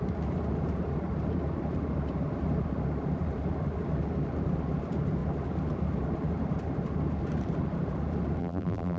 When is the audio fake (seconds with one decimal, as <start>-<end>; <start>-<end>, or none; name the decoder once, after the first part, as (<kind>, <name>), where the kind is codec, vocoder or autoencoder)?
8.4-9.0 (vocoder, BigVGAN v2)